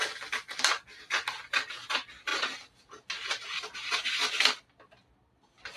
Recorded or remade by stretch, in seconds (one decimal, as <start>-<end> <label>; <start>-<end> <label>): 0.0-5.8 recorded